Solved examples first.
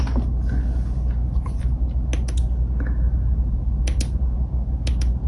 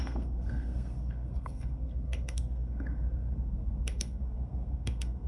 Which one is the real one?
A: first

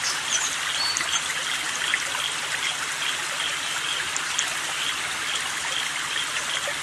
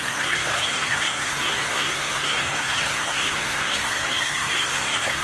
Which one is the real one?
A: first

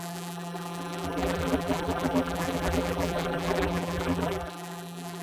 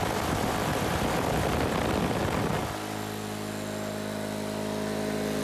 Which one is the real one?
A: second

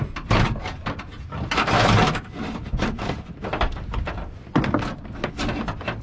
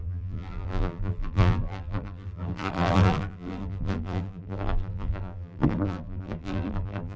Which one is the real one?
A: first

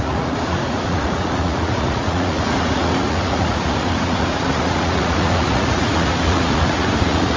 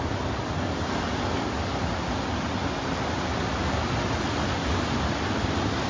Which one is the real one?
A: second